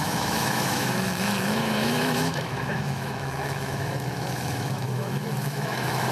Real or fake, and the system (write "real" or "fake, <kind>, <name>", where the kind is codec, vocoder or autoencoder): fake, autoencoder, DAC-VAE